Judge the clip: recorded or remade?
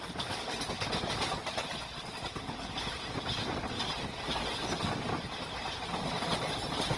recorded